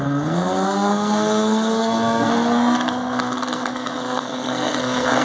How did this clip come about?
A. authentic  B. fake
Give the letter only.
B